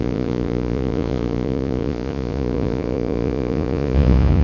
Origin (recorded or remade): remade